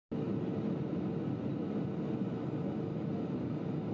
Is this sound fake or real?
real